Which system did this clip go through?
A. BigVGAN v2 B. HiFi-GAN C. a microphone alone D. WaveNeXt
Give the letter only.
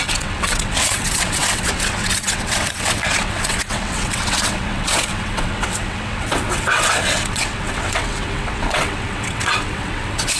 D